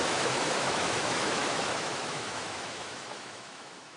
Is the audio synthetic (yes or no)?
yes